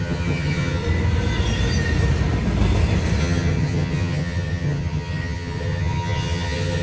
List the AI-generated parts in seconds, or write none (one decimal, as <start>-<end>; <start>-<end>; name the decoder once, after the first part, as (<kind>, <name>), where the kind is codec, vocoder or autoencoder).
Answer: 0.0-0.8 (vocoder, HiFi-GAN); 3.2-6.8